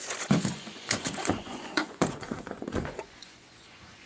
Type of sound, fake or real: fake